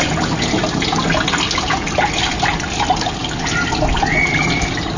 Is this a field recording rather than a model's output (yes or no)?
yes